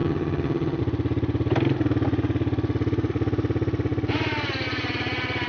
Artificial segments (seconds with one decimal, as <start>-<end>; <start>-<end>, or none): 0.0-0.8